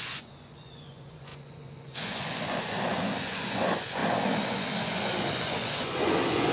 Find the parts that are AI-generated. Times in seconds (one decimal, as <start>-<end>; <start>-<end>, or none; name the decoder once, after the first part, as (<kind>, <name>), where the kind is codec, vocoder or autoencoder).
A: 0.0-6.5 (vocoder, Vocos)